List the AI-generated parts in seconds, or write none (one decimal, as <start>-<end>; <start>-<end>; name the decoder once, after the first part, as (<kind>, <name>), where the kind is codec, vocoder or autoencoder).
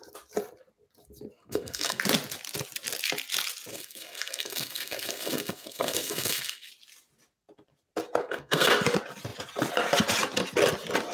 1.4-2.0 (codec, SNAC); 3.7-6.7; 8.2-8.7